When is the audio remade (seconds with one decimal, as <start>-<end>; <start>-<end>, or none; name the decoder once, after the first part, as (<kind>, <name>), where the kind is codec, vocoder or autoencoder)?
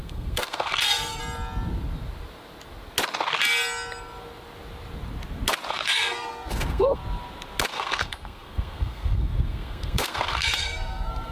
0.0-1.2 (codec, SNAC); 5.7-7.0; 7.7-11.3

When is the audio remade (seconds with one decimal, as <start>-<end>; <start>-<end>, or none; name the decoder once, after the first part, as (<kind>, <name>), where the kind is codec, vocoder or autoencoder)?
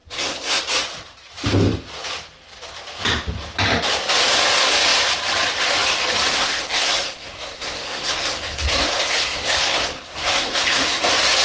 0.0-0.6 (codec, SNAC); 6.3-11.0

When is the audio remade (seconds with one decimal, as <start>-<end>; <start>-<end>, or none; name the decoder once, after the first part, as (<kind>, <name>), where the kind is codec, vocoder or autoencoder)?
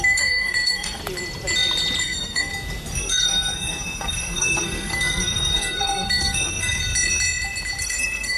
0.0-1.0 (codec, SNAC); 2.0-2.5; 3.0-6.8; 7.8-8.4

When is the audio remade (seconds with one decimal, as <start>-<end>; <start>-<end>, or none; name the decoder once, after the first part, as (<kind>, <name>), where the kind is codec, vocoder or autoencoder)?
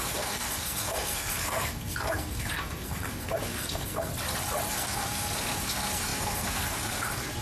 0.0-4.1 (codec, SNAC); 4.7-7.4